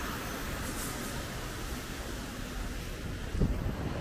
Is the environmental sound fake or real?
real